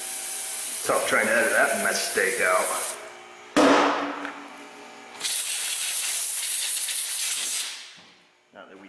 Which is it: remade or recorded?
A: recorded